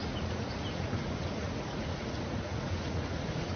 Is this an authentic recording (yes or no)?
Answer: no